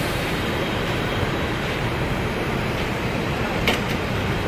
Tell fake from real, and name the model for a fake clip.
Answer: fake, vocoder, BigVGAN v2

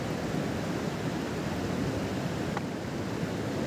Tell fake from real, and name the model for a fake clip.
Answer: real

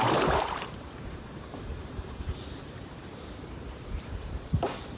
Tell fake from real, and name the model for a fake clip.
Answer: fake, vocoder, BigVGAN v2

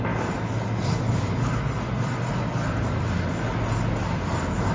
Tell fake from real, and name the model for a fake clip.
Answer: real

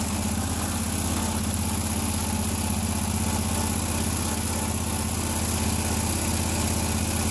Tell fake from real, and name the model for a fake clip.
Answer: real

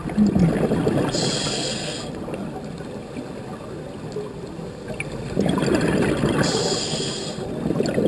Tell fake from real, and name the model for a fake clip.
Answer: real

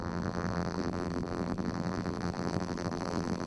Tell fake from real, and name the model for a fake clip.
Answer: fake, vocoder, BigVGAN v2